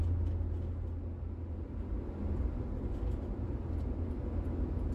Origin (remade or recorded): recorded